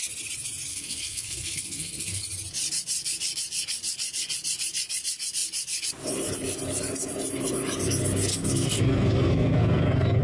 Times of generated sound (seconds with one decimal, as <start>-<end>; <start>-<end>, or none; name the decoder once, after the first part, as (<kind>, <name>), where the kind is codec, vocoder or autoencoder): 0.7-2.2 (codec, SNAC); 8.3-10.2